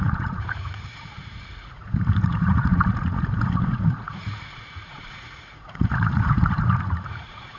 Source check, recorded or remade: remade